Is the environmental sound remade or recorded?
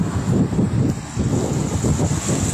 recorded